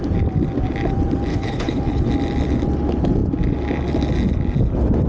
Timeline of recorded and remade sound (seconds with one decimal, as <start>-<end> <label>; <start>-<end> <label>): 0.0-1.3 recorded; 1.3-2.1 remade; 2.1-5.1 recorded